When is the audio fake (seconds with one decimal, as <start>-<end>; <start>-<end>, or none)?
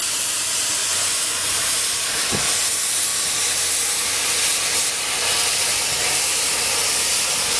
0.8-1.6